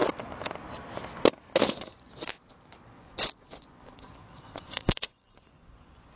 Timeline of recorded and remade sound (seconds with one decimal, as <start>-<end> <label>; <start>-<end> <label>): 0.0-1.7 recorded; 1.7-2.1 remade; 2.1-2.9 recorded; 2.9-6.2 remade